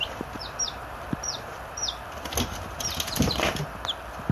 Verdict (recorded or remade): recorded